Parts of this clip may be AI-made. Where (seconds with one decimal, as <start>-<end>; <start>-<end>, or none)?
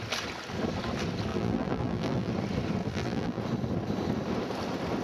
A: 1.3-2.3; 2.8-3.4